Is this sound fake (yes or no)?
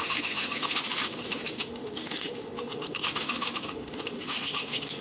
yes